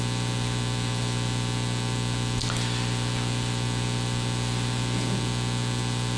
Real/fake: real